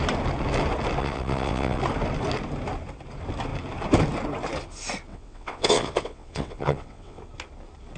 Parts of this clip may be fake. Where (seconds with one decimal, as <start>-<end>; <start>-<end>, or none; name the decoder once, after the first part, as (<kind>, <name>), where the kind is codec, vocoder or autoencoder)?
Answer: 1.0-1.8 (vocoder, WaveNeXt); 5.1-7.2